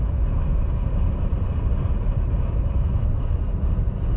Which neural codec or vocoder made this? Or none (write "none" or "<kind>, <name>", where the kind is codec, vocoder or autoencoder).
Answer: vocoder, BigVGAN v2